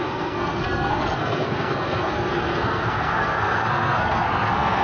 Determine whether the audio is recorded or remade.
remade